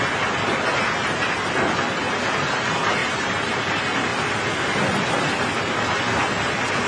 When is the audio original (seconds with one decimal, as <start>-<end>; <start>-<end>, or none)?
0.0-3.0; 3.5-6.9